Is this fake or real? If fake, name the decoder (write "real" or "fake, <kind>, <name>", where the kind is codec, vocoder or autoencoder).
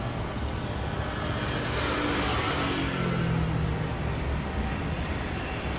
real